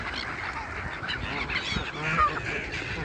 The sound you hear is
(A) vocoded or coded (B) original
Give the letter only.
B